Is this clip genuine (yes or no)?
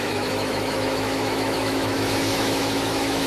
no